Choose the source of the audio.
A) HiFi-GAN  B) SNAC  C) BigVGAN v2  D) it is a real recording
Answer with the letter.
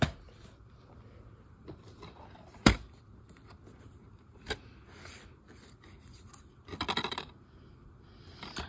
D